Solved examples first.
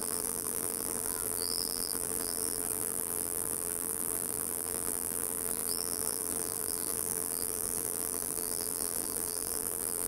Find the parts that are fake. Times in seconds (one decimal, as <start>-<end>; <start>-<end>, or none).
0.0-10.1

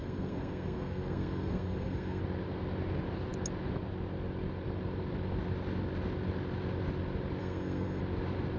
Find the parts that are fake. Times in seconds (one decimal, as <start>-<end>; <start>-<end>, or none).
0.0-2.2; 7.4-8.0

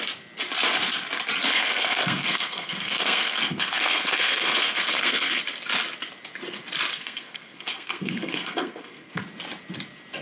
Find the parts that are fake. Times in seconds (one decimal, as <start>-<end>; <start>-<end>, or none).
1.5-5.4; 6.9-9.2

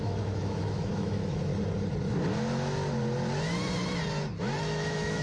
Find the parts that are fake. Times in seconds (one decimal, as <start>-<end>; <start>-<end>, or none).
0.0-1.5; 4.6-5.2